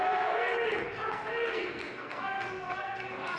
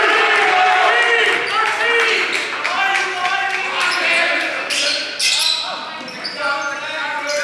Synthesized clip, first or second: first